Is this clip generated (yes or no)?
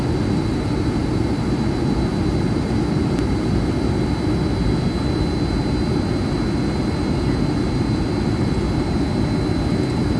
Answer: no